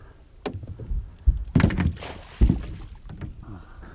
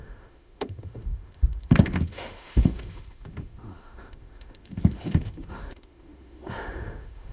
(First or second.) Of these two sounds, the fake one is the second